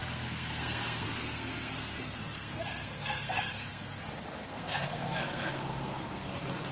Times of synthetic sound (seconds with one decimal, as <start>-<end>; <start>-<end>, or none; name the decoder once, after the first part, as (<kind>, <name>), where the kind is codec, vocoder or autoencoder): 0.0-4.0 (codec, SNAC); 4.4-6.7